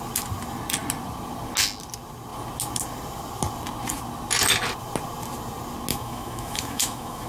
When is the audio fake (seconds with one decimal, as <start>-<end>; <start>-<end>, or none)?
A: 5.9-7.3